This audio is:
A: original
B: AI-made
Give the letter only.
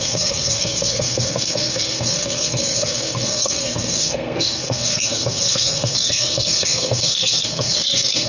B